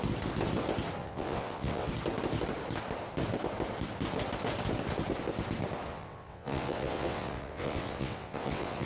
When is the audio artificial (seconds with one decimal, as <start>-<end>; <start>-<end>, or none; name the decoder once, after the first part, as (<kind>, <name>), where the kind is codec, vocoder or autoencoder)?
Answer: 1.0-1.9 (vocoder, WaveNeXt); 5.9-8.9